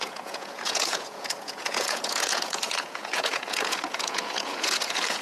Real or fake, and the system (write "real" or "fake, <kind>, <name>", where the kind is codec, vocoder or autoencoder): fake, vocoder, Vocos